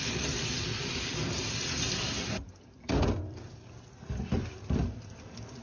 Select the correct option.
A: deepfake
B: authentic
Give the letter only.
A